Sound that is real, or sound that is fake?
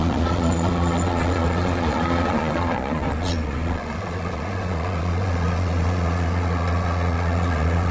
fake